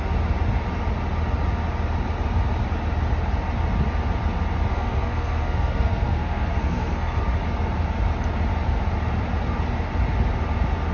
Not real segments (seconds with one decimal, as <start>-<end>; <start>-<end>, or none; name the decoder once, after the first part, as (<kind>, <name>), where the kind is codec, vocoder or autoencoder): 4.7-7.2 (codec, SNAC)